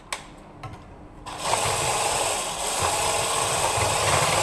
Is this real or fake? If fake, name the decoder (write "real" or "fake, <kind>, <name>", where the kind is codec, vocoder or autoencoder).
real